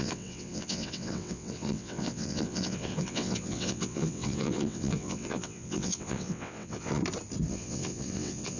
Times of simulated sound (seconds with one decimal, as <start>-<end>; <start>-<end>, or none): 0.0-7.0; 7.5-8.6